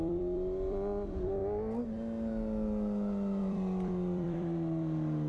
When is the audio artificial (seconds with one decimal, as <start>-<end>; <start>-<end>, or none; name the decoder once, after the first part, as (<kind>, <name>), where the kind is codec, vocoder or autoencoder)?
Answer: 0.0-1.4 (vocoder, BigVGAN v2); 3.4-5.3